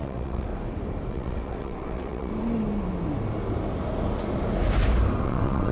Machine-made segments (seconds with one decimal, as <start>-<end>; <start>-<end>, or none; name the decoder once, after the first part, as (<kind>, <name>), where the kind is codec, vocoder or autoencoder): 0.0-0.5 (vocoder, WaveNeXt); 1.1-2.3; 5.2-5.7